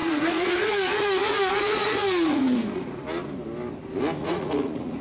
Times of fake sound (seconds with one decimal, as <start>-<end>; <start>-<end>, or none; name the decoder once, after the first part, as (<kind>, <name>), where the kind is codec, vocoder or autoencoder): 0.0-3.0 (vocoder, Vocos); 4.2-5.0